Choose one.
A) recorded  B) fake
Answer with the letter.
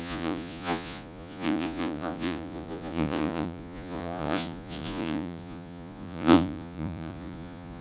B